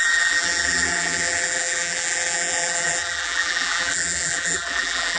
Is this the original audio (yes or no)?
no